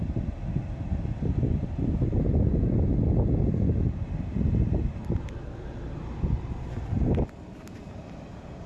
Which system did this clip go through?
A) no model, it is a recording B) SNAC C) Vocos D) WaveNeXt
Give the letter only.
A